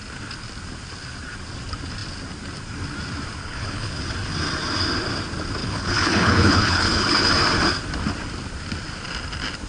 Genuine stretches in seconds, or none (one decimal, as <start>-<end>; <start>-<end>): 0.0-3.4; 4.0-5.6; 7.3-9.7